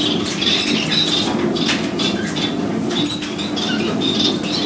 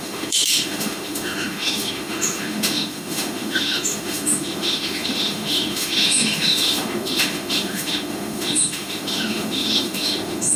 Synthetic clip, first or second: second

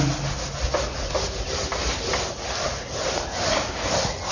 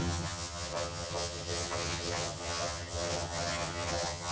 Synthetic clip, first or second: second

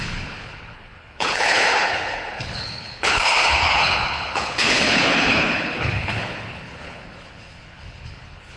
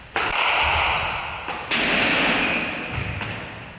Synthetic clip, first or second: first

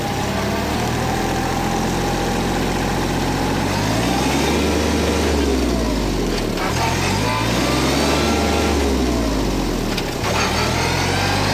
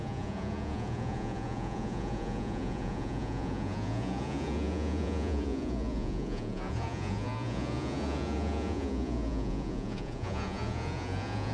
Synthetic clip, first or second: second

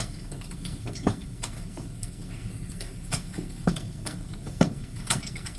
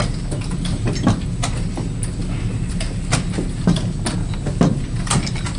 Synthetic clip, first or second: first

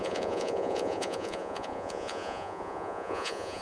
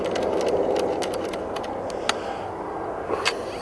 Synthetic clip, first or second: first